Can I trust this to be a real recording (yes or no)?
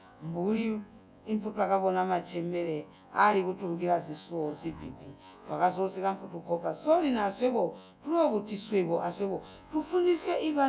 no